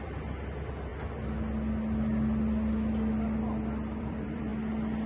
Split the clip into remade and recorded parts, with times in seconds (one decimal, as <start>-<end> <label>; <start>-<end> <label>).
0.0-0.9 remade; 0.9-4.0 recorded; 4.0-4.5 remade; 4.5-5.1 recorded